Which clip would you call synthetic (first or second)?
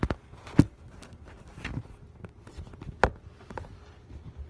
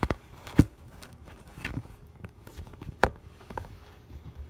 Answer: second